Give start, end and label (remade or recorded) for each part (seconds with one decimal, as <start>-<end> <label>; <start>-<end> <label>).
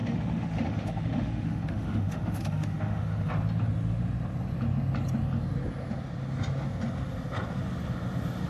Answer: 0.0-3.3 remade; 3.3-8.5 recorded